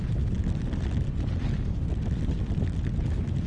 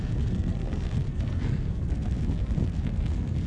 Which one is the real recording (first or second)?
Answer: first